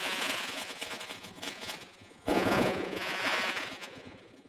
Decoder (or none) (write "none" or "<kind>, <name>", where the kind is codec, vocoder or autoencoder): vocoder, Vocos